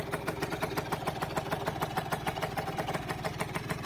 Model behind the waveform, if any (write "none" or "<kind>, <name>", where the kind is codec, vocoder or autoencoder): none